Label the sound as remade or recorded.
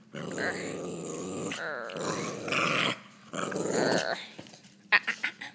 recorded